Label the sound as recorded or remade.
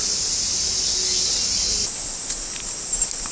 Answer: recorded